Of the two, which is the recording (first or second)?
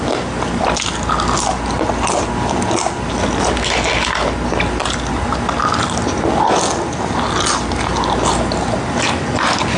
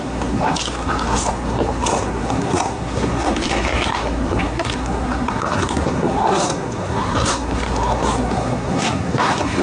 first